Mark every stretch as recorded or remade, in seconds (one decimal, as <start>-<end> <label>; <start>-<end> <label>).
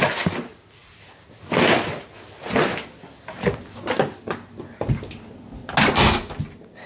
0.0-6.9 recorded